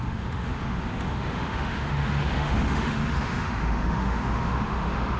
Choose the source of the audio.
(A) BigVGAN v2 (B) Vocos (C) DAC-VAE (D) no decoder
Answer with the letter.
C